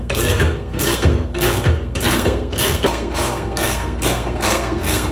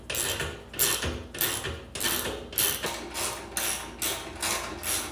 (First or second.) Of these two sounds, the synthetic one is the first